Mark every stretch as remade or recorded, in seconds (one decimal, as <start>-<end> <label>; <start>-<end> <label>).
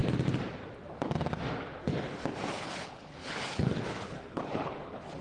0.0-2.5 recorded; 2.5-5.2 remade